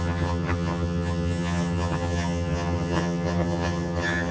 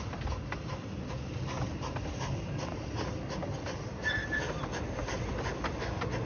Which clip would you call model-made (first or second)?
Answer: first